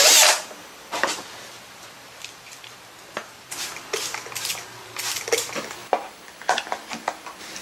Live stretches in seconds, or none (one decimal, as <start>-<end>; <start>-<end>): none